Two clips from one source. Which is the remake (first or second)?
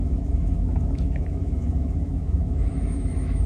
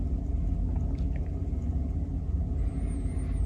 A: first